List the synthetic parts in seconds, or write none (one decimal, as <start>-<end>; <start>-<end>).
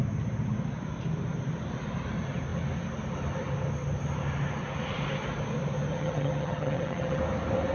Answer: 5.9-7.2